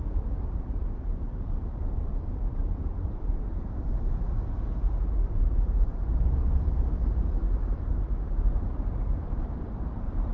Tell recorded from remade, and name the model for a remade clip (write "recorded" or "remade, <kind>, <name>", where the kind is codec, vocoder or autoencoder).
remade, vocoder, BigVGAN v2